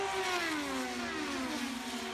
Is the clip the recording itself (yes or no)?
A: yes